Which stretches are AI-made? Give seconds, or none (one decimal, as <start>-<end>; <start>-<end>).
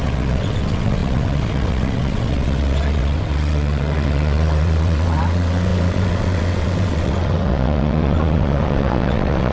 0.0-9.5